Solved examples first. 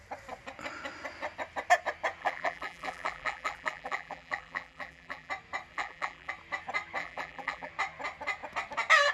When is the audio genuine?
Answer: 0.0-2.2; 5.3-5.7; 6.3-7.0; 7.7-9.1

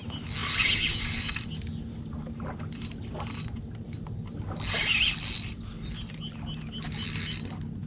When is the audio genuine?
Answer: 0.0-7.9